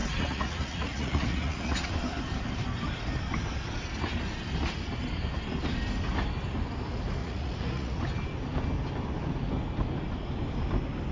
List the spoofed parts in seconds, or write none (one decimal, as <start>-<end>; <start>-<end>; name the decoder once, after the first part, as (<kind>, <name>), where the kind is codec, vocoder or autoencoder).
0.0-1.9 (vocoder, Vocos); 7.2-8.0